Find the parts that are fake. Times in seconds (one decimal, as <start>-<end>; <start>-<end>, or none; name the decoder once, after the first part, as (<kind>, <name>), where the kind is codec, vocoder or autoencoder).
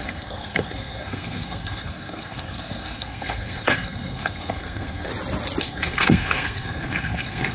0.0-5.1 (codec, SNAC); 5.6-7.5